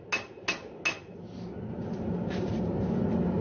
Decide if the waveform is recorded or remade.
recorded